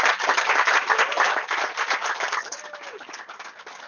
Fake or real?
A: real